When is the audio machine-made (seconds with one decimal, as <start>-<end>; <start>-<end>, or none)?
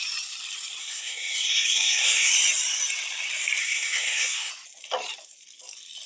0.8-2.3; 3.6-4.5